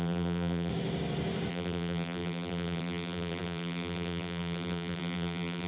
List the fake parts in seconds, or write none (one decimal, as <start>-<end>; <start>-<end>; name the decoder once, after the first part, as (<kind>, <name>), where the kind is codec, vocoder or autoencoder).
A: 0.0-0.7 (vocoder, BigVGAN v2); 1.5-5.7

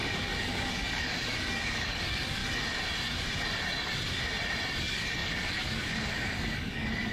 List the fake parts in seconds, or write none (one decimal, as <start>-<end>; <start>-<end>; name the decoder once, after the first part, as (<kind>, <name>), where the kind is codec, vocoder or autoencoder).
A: 0.0-2.4 (codec, DAC); 4.8-7.1

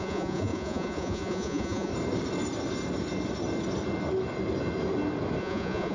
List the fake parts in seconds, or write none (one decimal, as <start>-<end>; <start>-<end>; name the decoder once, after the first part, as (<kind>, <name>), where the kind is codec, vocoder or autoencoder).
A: 0.0-1.9 (vocoder, Vocos); 5.4-5.9

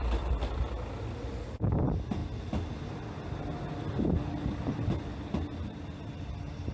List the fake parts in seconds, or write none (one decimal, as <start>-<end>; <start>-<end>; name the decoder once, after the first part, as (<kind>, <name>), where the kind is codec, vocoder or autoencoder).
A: 0.0-0.6 (vocoder, BigVGAN v2)

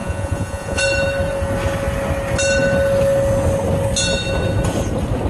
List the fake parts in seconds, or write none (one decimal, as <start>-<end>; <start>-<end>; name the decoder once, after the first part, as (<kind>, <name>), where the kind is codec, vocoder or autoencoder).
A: 0.0-0.8 (vocoder, Vocos)

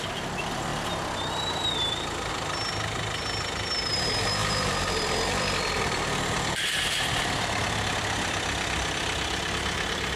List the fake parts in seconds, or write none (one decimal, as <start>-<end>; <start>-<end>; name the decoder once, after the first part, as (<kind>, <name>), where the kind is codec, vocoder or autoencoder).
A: 0.0-0.7 (vocoder, BigVGAN v2); 2.3-10.2